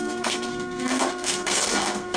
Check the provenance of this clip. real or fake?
fake